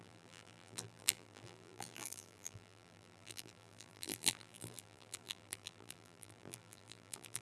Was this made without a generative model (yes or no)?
no